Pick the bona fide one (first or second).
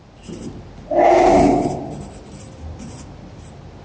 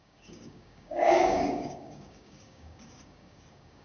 first